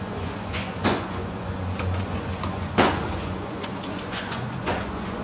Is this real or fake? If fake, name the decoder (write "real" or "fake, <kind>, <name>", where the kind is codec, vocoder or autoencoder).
fake, vocoder, Vocos